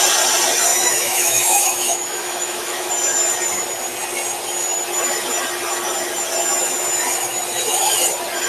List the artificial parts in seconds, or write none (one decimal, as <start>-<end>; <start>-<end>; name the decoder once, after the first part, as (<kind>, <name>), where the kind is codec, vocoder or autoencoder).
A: 0.7-2.9 (autoencoder, DAC-VAE)